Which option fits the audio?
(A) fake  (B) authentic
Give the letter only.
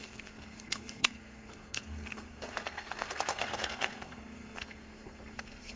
A